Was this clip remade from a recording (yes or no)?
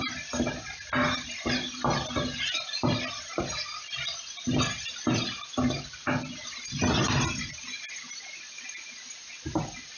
no